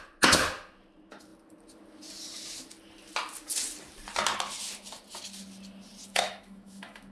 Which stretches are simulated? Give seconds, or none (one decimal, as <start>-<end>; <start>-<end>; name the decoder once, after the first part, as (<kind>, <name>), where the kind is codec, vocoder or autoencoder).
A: 6.1-7.1 (autoencoder, DAC-VAE)